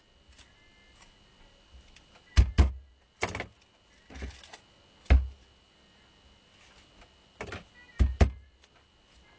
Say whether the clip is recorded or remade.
recorded